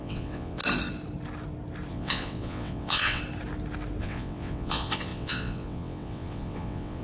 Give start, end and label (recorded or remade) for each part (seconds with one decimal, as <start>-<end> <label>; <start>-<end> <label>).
0.0-0.6 remade; 0.6-1.9 recorded; 1.9-3.2 remade; 3.2-4.0 recorded; 4.0-7.0 remade